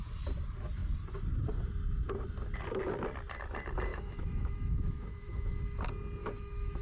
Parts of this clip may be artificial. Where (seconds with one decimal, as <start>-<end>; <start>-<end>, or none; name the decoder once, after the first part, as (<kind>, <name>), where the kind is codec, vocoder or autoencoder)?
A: 3.9-5.8 (autoencoder, DAC-VAE); 6.2-6.8